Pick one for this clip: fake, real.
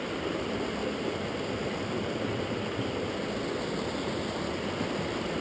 real